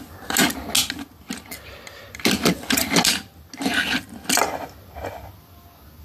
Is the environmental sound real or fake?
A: real